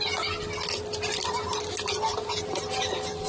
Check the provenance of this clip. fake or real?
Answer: real